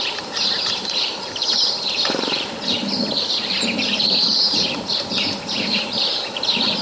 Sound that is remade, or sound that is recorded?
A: remade